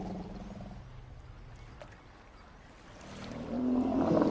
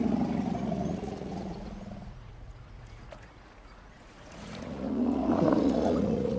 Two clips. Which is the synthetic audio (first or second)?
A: second